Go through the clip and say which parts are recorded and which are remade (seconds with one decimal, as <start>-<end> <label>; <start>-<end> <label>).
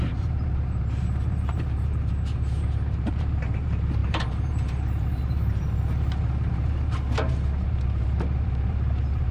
0.0-9.3 remade